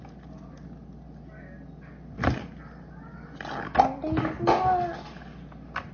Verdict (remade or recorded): recorded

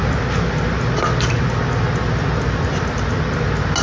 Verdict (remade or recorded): recorded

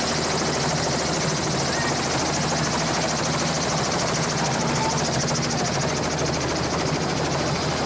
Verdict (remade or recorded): recorded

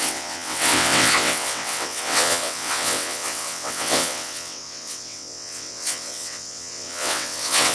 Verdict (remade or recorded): remade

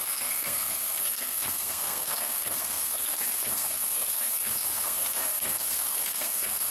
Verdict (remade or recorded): remade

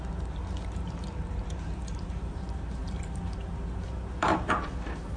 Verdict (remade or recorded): remade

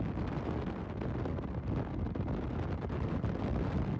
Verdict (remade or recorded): recorded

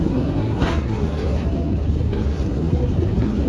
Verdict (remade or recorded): remade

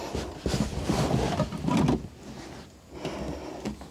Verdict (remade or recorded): recorded